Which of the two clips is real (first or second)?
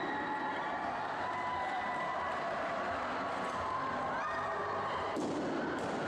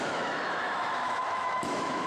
first